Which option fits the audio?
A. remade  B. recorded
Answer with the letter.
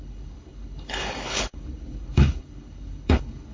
A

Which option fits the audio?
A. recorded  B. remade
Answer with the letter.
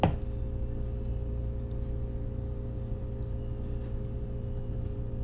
A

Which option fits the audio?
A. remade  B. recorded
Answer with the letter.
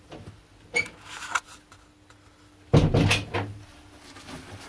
B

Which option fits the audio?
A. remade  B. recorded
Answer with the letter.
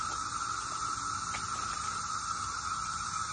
B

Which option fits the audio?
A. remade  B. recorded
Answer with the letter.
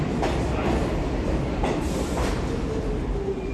B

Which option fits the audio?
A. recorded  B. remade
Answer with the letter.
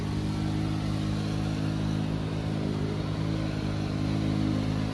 A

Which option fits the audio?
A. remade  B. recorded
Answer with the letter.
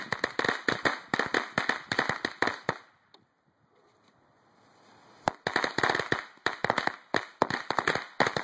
B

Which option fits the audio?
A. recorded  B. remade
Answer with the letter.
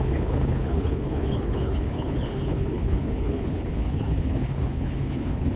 B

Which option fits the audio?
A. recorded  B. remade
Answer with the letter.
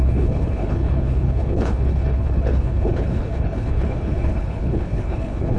B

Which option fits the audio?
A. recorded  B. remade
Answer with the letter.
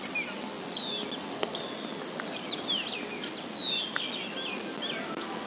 A